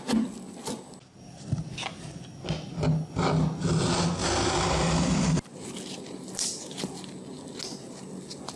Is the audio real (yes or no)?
yes